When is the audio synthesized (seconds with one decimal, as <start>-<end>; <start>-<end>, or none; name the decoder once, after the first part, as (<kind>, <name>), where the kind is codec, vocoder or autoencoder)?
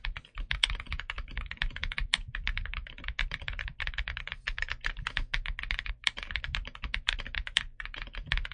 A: 0.0-5.3 (vocoder, BigVGAN v2); 5.9-8.5